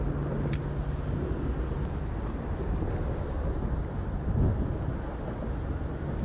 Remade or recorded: recorded